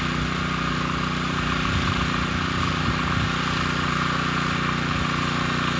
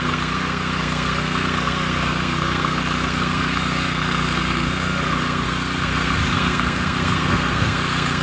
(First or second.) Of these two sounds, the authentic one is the first